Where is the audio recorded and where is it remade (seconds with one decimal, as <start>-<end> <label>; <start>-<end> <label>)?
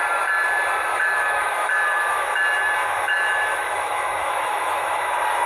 0.0-0.9 recorded; 0.9-2.3 remade; 2.3-2.8 recorded; 2.8-5.1 remade; 5.1-5.5 recorded